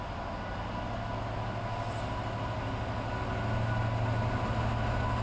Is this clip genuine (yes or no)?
yes